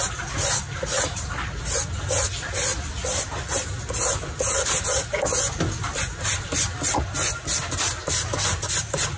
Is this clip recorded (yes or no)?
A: yes